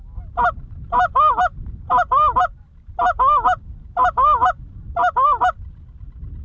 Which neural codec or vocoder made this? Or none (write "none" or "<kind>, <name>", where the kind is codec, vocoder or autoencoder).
none